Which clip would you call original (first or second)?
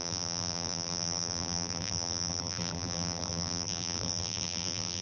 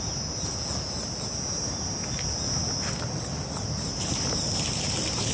second